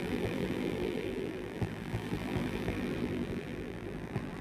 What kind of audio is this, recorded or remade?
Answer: remade